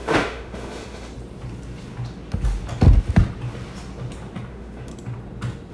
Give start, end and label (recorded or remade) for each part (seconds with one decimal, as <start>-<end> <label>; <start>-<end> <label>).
0.0-1.1 remade; 1.1-4.5 recorded; 4.5-4.9 remade; 4.9-5.7 recorded